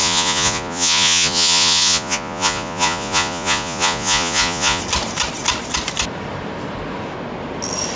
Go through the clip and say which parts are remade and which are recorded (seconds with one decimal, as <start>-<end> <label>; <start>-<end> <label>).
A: 0.0-4.8 remade; 4.8-8.0 recorded